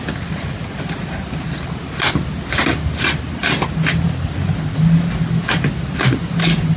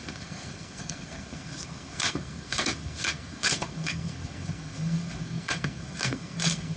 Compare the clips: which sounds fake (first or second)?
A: second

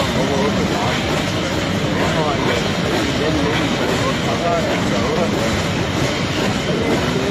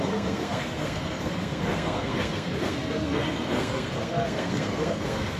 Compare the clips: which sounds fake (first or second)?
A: second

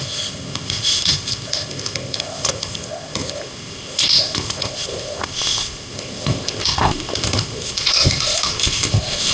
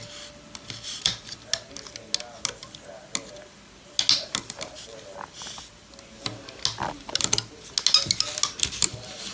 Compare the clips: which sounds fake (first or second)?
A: first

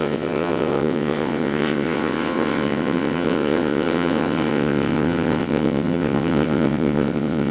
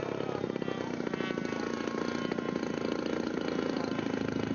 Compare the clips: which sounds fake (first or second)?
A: first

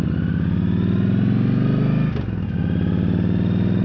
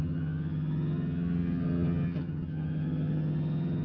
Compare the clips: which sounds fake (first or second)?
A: second